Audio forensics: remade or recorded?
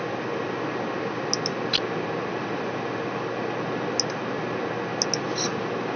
recorded